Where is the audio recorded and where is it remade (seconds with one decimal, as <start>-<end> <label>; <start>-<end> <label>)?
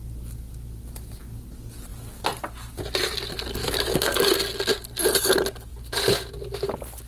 0.0-3.6 recorded; 3.6-4.2 remade; 4.2-7.1 recorded